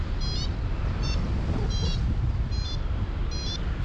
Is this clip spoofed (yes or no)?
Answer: no